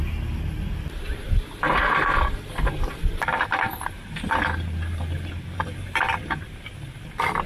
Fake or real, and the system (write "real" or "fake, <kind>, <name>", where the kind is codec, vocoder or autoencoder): real